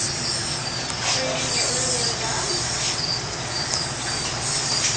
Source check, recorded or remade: recorded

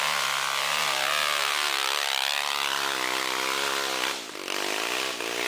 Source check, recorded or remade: recorded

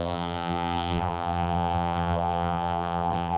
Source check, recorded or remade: remade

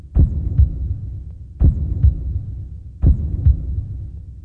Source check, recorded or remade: recorded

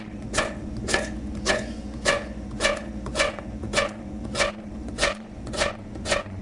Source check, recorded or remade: remade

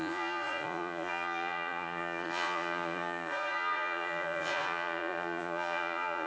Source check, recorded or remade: remade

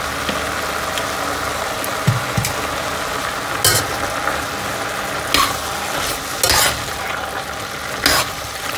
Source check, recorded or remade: recorded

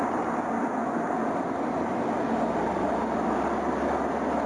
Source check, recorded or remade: recorded